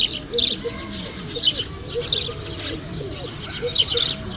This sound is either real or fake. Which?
real